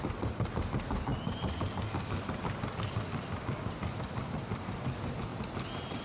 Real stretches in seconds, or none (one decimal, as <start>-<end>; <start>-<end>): 0.0-6.0